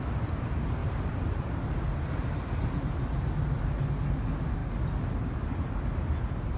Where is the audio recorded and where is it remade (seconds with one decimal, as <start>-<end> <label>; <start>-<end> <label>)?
0.0-6.6 recorded